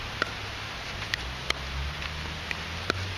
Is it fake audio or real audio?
real